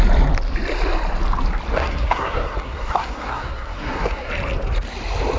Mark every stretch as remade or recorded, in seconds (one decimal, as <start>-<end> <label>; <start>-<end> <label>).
0.0-1.7 recorded; 1.7-4.3 remade; 4.3-5.4 recorded